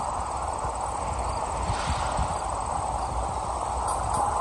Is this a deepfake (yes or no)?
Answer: no